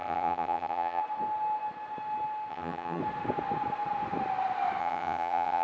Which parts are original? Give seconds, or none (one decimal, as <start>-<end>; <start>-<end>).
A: 1.0-2.5; 3.0-4.8